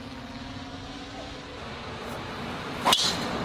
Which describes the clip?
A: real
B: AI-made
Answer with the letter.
A